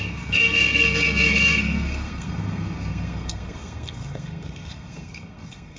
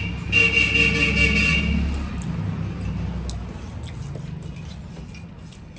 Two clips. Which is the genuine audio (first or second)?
second